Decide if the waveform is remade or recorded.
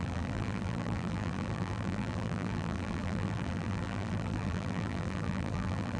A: remade